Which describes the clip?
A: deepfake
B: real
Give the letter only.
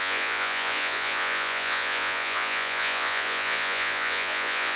A